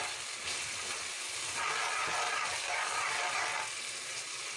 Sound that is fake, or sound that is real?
real